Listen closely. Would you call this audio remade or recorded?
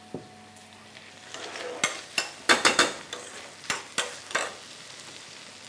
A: recorded